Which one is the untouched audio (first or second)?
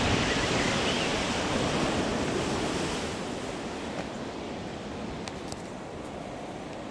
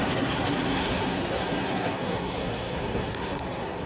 first